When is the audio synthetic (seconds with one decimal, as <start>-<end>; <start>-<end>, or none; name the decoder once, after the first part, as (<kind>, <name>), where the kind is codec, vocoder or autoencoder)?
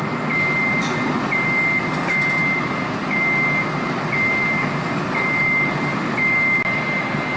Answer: none